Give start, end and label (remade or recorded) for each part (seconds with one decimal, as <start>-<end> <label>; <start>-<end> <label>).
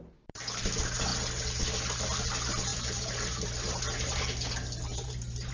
0.0-2.7 recorded; 2.7-3.8 remade; 3.8-4.9 recorded; 4.9-5.5 remade